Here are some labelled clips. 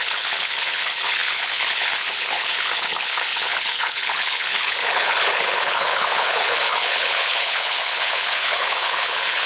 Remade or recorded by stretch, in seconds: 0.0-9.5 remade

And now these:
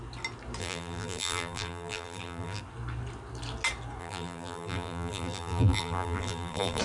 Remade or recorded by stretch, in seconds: 0.0-0.6 recorded; 0.6-2.6 remade; 2.6-4.0 recorded; 4.0-6.8 remade

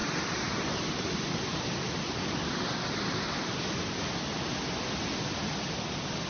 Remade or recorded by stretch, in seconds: 0.0-6.3 recorded